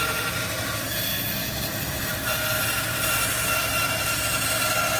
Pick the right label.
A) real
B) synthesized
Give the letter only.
A